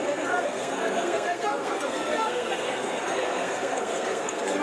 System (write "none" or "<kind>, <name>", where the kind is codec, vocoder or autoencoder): codec, SNAC